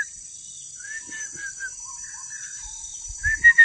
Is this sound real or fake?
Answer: real